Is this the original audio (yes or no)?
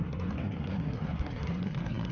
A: no